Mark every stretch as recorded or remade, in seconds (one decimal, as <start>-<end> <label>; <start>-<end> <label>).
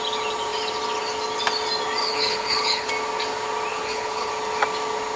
0.0-2.0 recorded; 2.0-2.9 remade; 2.9-3.7 recorded; 3.7-4.3 remade; 4.3-5.2 recorded